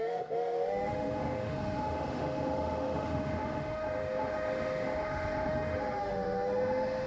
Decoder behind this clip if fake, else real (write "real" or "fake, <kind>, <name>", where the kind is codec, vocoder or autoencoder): fake, autoencoder, DAC-VAE